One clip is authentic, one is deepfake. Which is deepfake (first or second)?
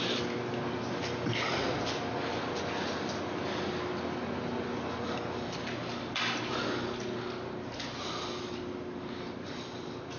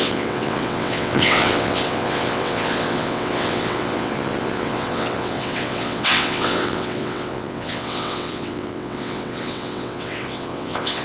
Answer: second